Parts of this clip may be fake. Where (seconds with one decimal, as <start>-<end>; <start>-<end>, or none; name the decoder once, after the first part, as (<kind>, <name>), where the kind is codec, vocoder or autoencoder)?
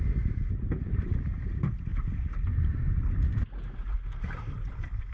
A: 0.0-1.9 (vocoder, BigVGAN v2)